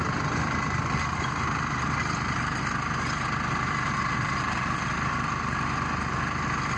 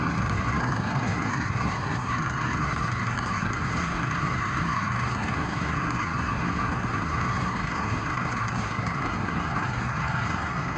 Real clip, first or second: first